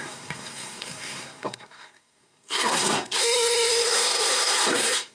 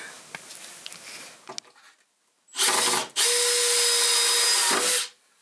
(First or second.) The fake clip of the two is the first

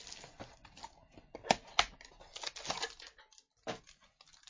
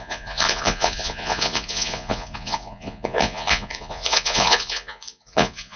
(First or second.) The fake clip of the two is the second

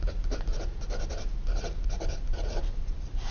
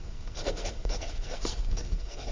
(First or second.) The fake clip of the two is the second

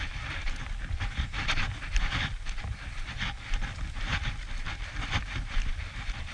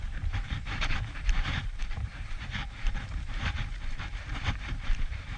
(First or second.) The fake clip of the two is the second